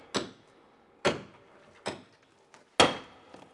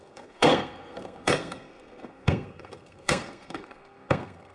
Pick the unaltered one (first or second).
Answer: first